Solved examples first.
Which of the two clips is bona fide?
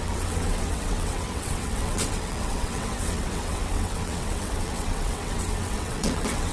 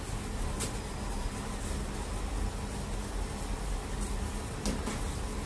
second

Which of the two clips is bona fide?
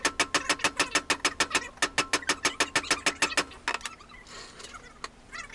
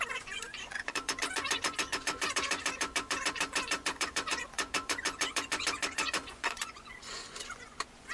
first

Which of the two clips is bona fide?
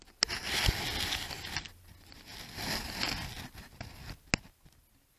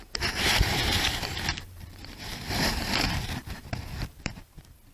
first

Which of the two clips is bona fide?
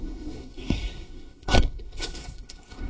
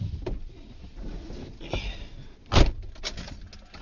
second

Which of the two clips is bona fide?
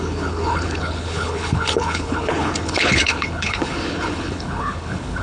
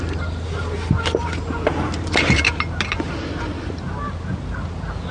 second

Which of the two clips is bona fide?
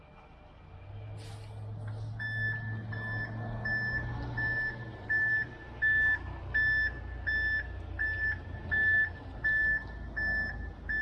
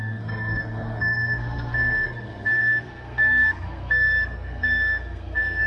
first